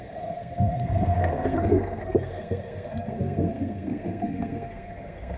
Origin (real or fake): fake